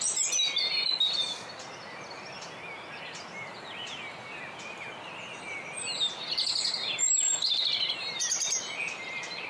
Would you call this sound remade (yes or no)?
no